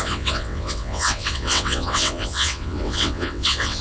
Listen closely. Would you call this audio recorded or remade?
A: remade